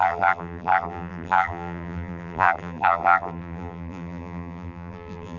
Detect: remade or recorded remade